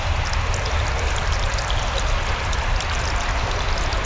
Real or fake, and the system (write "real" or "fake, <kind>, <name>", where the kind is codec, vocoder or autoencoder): real